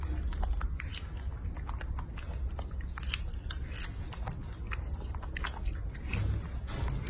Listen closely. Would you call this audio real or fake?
real